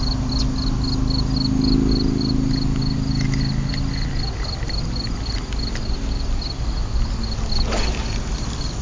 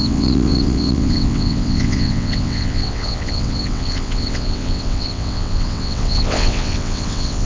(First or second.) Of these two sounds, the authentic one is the first